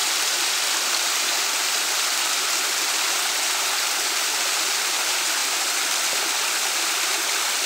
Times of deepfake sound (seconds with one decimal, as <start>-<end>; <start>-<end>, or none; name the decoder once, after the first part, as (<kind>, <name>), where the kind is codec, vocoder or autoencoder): 0.0-3.2 (vocoder, BigVGAN v2)